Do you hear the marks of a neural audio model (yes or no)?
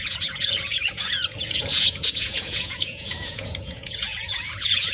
yes